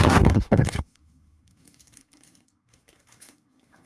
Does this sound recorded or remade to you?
remade